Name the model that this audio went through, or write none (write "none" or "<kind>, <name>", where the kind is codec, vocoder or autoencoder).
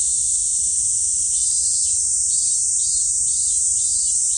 vocoder, BigVGAN v2